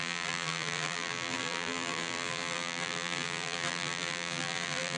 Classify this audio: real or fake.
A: fake